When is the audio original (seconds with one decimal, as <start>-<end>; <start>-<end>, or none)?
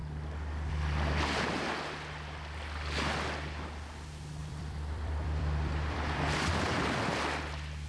0.0-4.4; 6.2-7.9